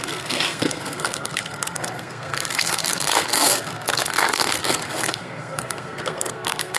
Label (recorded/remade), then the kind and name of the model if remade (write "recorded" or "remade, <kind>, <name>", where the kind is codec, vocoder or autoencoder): remade, codec, SNAC